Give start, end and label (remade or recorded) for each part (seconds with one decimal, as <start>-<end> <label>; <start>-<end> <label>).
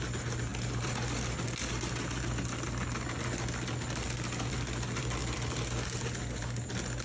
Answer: 0.0-7.0 recorded